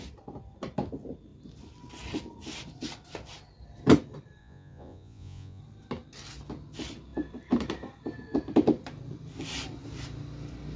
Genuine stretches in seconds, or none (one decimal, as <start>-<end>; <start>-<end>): 0.0-4.4; 5.6-10.8